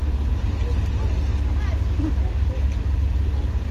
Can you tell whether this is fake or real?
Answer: real